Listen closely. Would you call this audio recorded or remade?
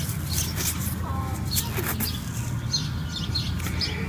recorded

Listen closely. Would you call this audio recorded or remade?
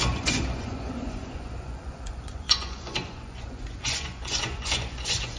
remade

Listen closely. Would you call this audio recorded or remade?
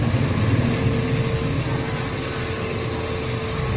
recorded